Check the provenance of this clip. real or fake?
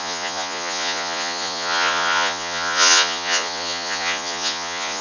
fake